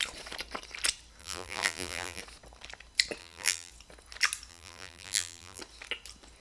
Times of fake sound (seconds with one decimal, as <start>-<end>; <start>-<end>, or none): 1.2-2.2; 3.2-3.7; 4.5-5.6